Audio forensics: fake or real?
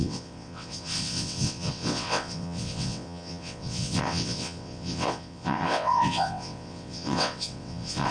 fake